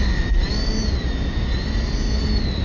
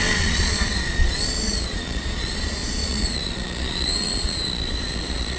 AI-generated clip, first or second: second